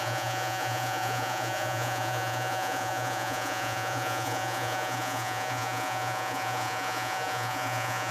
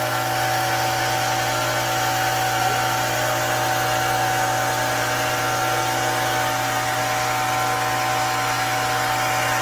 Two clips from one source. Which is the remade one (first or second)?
first